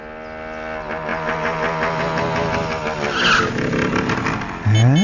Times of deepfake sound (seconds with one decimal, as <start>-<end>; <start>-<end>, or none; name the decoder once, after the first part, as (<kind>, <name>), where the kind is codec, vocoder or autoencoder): none

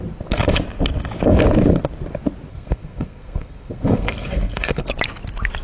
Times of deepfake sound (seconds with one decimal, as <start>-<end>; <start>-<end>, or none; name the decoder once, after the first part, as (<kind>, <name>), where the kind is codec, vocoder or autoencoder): 2.5-4.9 (codec, SNAC)

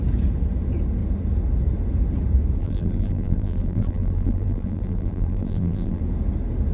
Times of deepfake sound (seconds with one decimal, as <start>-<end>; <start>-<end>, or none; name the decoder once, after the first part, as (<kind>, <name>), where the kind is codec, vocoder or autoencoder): 2.6-6.0 (vocoder, BigVGAN v2)

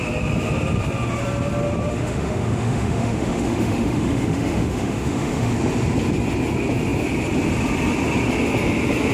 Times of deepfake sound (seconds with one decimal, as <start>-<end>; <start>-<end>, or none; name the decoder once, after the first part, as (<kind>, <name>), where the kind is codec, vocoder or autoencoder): 1.9-5.5 (autoencoder, DAC-VAE)

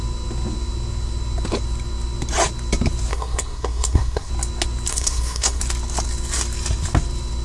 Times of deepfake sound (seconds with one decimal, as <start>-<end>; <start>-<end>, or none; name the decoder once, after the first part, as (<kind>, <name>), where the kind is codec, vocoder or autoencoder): 3.1-4.3 (codec, SNAC); 4.9-5.6

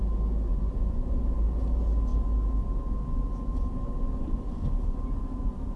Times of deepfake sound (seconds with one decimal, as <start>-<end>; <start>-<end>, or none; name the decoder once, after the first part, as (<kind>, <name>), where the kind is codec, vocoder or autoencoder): 0.5-1.2 (vocoder, Vocos)

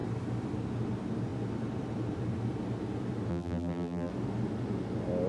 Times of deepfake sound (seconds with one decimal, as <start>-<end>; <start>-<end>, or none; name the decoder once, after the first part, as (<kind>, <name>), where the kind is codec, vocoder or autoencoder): 3.3-4.1 (vocoder, BigVGAN v2)